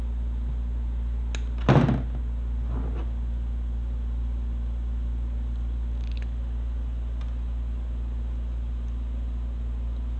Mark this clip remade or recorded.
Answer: recorded